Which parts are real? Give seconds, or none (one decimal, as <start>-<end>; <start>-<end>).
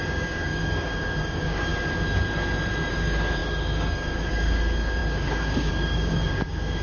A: 1.7-2.9